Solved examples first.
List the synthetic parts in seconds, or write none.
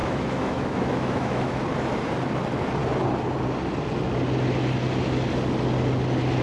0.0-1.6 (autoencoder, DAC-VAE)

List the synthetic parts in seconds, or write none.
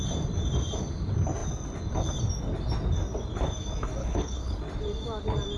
4.0-4.6 (codec, HILCodec)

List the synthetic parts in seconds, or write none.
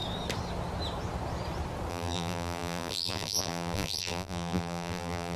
1.9-5.4 (vocoder, BigVGAN v2)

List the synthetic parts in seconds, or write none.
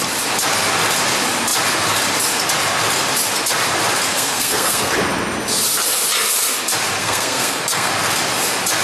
4.1-4.9 (codec, SNAC); 7.0-7.9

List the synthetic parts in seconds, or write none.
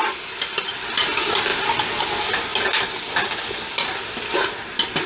none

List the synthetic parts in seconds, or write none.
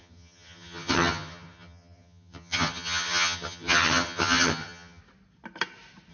0.0-5.0 (vocoder, HiFi-GAN)